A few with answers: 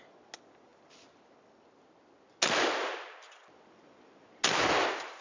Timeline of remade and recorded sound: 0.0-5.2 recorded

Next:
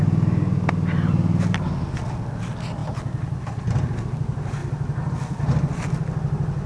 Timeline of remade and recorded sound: 0.0-6.7 recorded

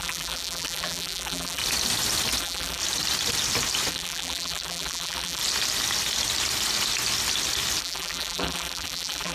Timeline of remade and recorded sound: 0.0-1.6 remade; 1.6-2.4 recorded; 2.4-2.8 remade; 2.8-3.9 recorded; 3.9-5.4 remade; 5.4-7.8 recorded; 7.8-9.3 remade

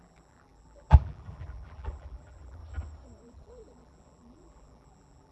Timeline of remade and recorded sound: 0.0-2.6 remade; 2.6-3.2 recorded; 3.2-5.3 remade

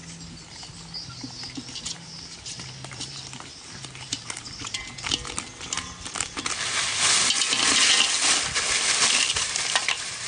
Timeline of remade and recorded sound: 0.0-1.8 recorded; 1.8-4.8 remade; 4.8-6.1 recorded; 6.1-6.9 remade; 6.9-9.3 recorded; 9.3-10.3 remade